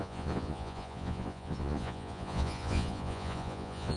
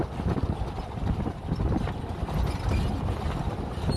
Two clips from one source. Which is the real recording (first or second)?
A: second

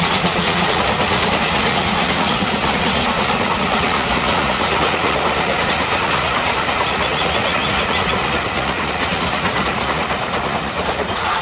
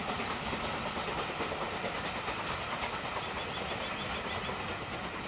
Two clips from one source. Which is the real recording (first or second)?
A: second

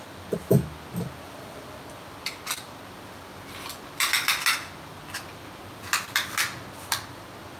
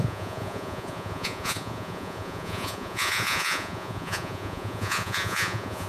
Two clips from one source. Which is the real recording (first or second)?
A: first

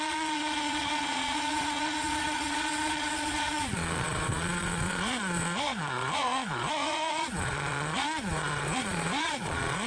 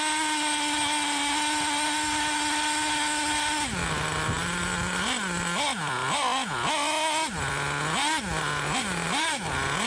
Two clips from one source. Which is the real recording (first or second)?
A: second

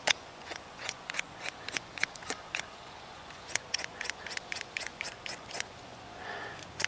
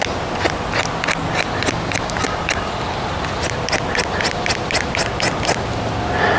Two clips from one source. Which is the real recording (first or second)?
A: second